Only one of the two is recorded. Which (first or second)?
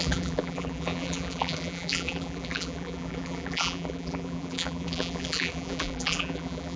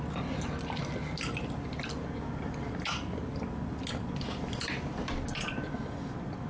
second